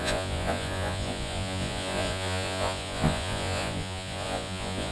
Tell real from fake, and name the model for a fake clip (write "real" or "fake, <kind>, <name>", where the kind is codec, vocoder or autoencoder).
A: fake, vocoder, Vocos